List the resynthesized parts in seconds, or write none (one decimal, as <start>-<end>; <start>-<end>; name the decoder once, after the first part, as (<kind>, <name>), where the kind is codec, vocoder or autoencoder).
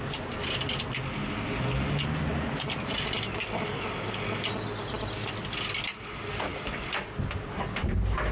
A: none